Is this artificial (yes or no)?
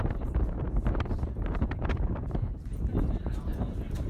yes